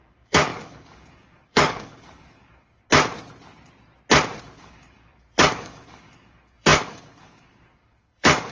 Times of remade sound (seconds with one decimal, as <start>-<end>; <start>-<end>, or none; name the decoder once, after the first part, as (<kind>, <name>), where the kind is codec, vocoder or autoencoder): 0.0-2.8 (codec, DAC); 4.4-8.5